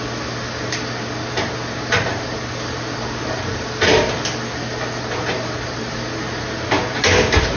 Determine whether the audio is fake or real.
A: real